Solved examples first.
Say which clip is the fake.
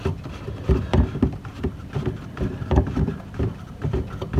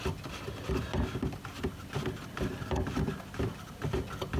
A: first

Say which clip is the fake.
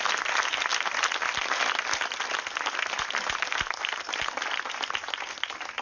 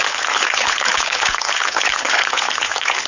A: second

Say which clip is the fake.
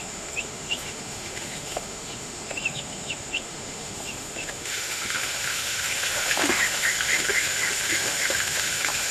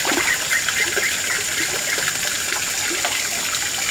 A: first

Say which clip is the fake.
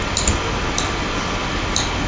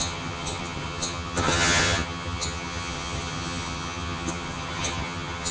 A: second